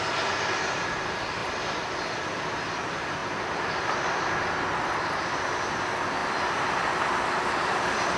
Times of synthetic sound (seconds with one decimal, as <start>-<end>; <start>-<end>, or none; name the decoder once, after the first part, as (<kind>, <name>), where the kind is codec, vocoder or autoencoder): 1.4-2.3 (vocoder, BigVGAN v2); 3.2-4.0; 6.2-8.2